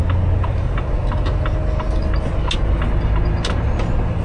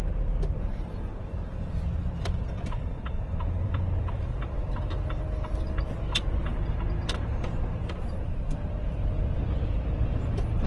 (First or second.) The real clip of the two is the first